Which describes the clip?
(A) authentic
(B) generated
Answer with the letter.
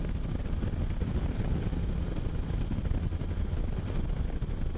A